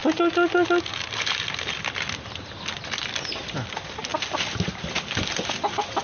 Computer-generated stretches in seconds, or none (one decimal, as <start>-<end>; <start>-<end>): none